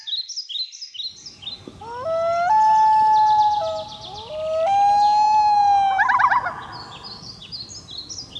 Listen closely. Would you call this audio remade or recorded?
recorded